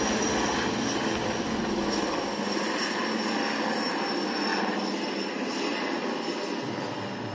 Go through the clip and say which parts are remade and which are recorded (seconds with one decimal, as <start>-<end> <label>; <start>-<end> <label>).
0.0-7.3 recorded

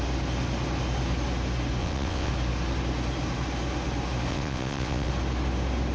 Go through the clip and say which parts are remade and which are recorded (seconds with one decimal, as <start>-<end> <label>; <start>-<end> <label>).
0.0-1.8 recorded; 1.8-2.3 remade; 2.3-4.3 recorded; 4.3-5.1 remade; 5.1-5.9 recorded

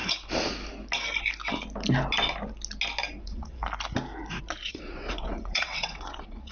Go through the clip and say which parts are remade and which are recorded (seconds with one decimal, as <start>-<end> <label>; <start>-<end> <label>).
0.0-3.2 recorded; 3.2-3.6 remade; 3.6-4.7 recorded; 4.7-6.5 remade

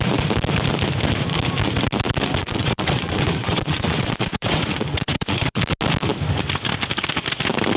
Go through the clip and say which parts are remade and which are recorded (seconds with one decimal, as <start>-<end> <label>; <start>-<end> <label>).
0.0-2.4 recorded; 2.4-5.6 remade; 5.6-7.8 recorded

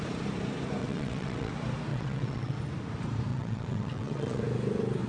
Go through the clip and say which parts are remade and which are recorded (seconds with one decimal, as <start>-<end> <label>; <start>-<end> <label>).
0.0-0.8 recorded; 0.8-1.5 remade; 1.5-1.9 recorded; 1.9-2.6 remade; 2.6-3.3 recorded; 3.3-4.4 remade; 4.4-5.1 recorded

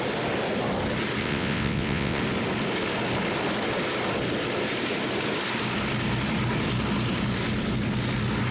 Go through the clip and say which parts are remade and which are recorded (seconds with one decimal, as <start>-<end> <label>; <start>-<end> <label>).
0.0-1.2 recorded; 1.2-2.2 remade; 2.2-8.5 recorded